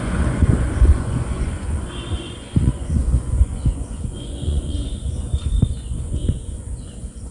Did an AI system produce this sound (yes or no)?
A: yes